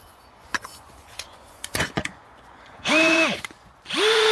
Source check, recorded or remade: remade